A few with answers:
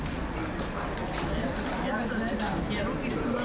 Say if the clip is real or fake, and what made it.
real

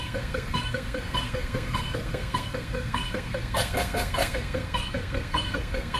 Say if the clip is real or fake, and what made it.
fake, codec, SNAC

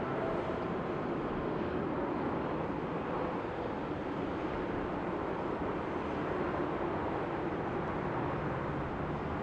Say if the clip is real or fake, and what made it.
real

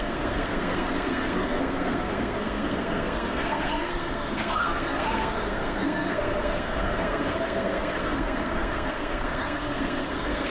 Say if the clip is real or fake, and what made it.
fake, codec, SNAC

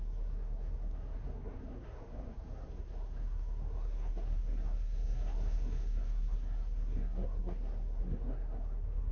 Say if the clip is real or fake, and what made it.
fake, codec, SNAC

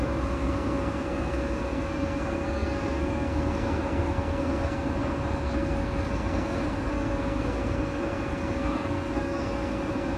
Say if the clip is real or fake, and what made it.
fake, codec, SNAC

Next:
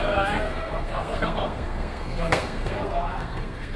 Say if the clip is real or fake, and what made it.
fake, codec, SNAC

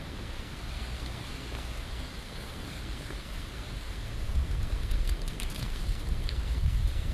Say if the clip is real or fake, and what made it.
fake, codec, SNAC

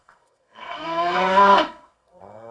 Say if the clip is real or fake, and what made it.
fake, codec, SNAC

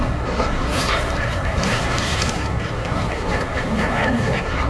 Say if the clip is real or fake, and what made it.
fake, codec, SNAC